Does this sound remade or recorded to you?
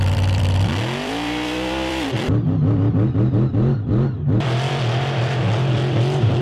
remade